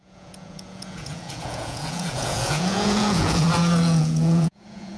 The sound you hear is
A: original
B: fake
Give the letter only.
B